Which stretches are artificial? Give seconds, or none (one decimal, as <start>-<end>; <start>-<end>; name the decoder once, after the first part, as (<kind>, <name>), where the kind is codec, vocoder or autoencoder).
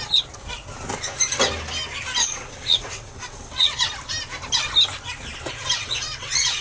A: 2.2-3.8 (vocoder, WaveNeXt); 5.8-6.6